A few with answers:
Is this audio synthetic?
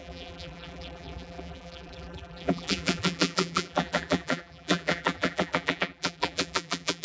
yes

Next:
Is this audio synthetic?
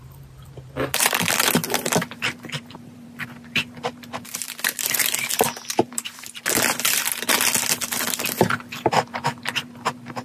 yes